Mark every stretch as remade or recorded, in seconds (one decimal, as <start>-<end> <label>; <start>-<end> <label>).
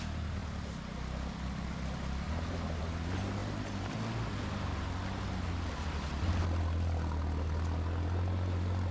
0.0-8.9 recorded